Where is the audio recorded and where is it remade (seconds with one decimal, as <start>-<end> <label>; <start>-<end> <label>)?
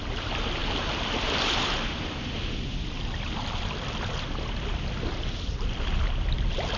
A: 0.0-6.8 recorded